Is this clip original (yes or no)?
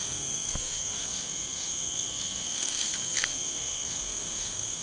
no